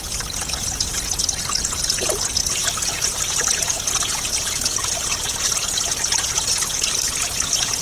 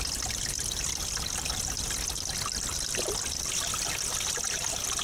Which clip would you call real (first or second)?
second